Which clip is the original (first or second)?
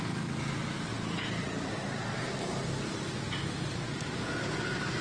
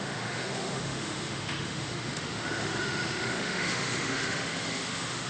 first